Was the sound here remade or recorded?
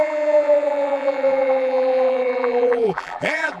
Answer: remade